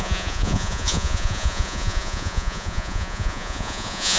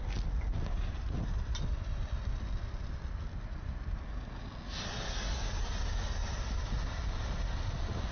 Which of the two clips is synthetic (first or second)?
first